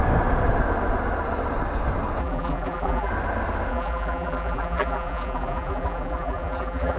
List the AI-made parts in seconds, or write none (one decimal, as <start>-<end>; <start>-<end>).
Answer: 2.2-3.1; 3.7-7.0